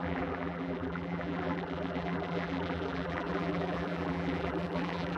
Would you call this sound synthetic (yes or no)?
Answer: yes